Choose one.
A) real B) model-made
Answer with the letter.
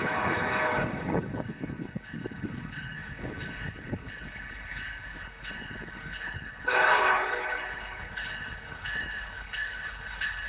B